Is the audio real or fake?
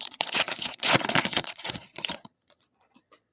fake